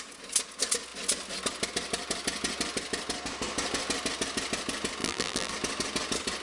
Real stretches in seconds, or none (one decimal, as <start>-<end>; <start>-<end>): 0.0-5.0; 5.5-6.4